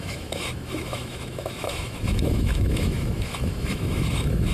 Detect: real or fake fake